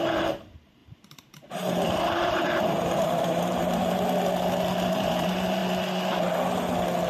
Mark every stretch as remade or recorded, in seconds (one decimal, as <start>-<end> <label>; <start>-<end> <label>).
0.0-3.8 remade; 3.8-4.9 recorded; 4.9-5.6 remade; 5.6-7.1 recorded